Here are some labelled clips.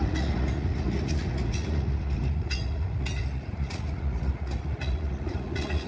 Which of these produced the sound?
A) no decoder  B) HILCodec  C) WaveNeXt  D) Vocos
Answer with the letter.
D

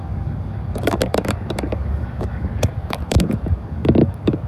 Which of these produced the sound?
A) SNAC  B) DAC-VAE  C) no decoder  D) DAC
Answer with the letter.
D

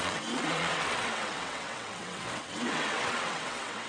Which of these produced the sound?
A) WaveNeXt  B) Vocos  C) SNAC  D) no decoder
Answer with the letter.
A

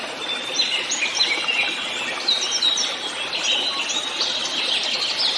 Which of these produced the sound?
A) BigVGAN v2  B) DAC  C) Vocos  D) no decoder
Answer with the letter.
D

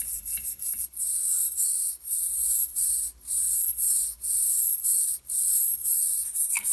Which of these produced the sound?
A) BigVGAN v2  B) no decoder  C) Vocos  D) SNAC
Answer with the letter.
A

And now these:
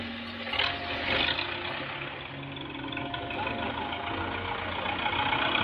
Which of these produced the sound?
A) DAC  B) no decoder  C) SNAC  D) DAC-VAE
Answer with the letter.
B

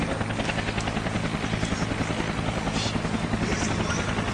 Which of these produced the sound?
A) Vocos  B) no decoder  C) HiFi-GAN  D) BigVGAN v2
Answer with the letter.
B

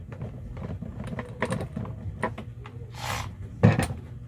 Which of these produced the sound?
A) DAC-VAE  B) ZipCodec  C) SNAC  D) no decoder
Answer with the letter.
D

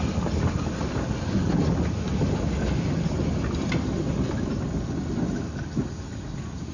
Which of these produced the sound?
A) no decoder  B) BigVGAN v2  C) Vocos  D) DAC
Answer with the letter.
A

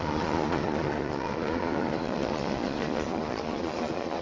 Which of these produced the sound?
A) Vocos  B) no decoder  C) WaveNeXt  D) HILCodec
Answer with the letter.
A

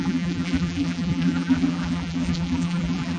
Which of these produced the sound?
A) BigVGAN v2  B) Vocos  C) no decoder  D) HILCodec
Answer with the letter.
A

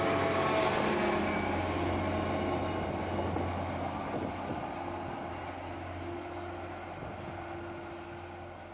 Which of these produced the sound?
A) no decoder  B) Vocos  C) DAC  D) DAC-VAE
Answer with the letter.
A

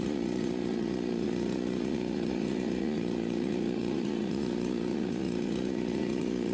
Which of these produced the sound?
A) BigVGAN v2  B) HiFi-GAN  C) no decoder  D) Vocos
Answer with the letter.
D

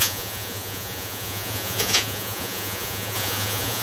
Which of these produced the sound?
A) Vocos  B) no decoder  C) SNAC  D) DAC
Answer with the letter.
A